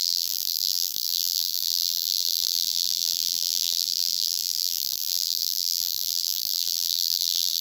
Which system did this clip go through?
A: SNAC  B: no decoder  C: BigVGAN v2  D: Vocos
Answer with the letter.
C